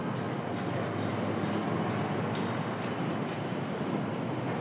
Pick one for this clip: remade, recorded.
recorded